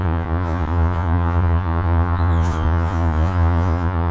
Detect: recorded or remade remade